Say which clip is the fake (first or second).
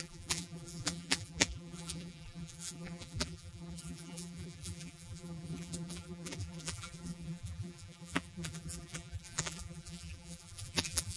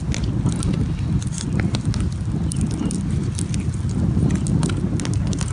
first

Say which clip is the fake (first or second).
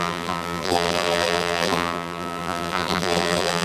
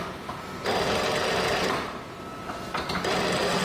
first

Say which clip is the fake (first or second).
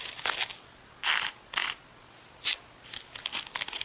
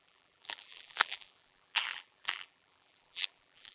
second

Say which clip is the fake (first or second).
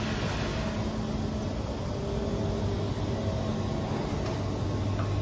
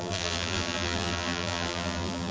second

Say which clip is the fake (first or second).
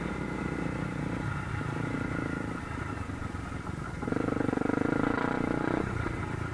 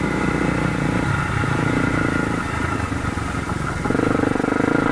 first